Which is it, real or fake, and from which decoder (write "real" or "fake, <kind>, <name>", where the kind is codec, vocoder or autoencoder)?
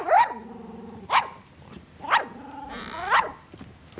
real